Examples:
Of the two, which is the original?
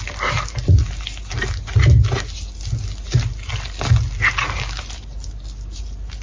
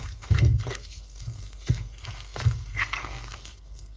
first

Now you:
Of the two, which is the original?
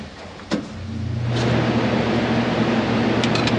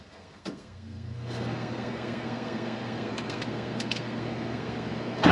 first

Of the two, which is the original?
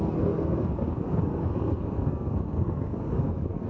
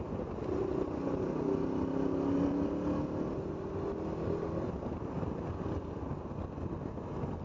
second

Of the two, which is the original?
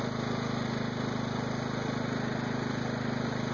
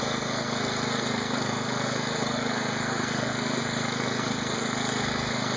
first